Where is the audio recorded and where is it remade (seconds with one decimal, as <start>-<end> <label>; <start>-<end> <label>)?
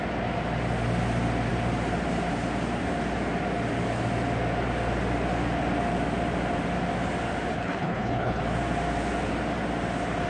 0.0-7.5 recorded; 7.5-8.4 remade; 8.4-10.3 recorded